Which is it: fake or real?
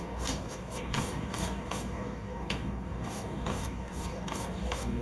fake